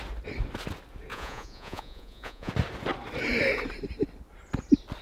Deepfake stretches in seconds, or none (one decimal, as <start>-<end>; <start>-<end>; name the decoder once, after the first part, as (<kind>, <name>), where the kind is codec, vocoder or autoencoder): 1.1-2.5 (vocoder, Vocos)

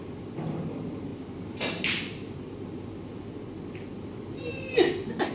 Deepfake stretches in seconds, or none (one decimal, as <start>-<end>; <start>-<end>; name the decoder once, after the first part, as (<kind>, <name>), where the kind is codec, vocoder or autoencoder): none